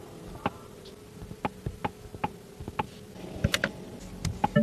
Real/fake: real